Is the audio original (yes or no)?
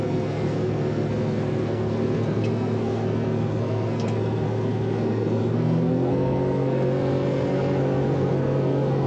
no